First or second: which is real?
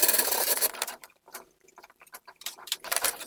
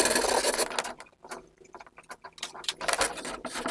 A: second